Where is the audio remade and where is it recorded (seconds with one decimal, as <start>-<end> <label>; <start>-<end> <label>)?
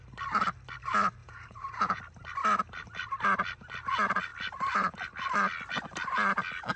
0.0-1.2 recorded; 1.2-2.0 remade; 2.0-6.8 recorded